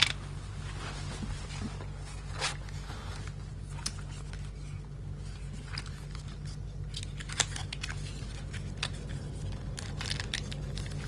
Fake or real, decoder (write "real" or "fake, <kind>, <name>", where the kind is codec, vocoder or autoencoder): real